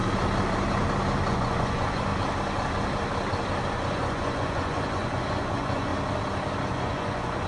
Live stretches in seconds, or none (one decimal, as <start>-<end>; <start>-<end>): 0.0-1.3; 2.1-3.7; 5.9-6.7